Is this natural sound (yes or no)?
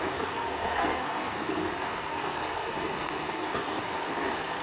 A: no